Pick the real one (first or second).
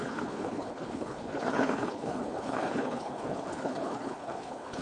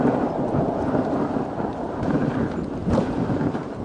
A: second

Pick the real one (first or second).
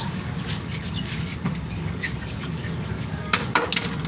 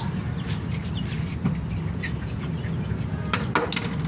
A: second